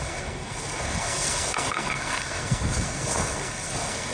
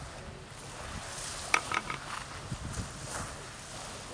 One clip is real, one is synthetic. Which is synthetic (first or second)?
first